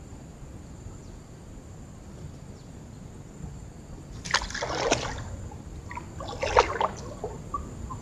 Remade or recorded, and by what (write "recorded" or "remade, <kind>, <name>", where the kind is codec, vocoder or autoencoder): recorded